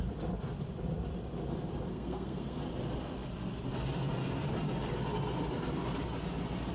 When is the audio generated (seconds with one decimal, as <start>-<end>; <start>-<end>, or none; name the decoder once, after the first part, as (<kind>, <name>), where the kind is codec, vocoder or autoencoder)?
1.9-2.6 (codec, SNAC)